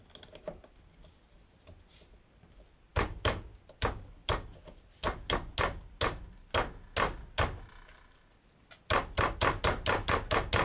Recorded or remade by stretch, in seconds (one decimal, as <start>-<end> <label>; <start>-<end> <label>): 0.0-10.6 recorded